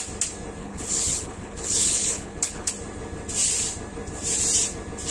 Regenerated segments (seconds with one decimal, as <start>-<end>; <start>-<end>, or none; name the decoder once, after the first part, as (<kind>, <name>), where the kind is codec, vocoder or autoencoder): 0.6-2.7 (codec, HILCodec)